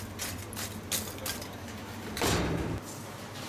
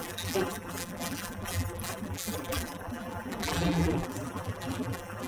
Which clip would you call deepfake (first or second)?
second